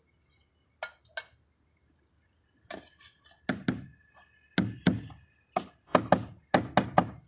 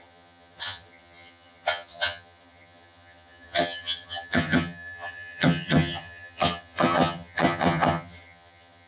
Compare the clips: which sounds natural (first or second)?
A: first